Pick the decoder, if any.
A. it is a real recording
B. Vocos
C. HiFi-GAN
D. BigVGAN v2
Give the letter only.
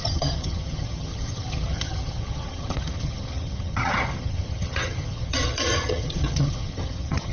C